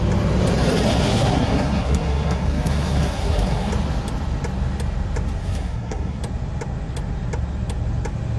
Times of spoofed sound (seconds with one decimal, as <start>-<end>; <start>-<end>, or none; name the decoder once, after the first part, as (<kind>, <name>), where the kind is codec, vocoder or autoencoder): 1.0-3.7 (codec, SNAC); 5.4-6.2